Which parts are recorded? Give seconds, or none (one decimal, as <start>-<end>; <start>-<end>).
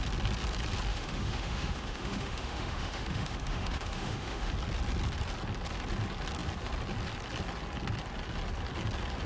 0.0-0.9; 4.5-9.3